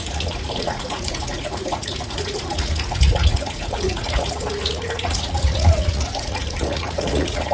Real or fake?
fake